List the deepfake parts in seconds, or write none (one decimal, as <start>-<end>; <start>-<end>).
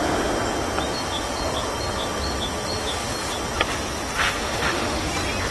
4.2-5.1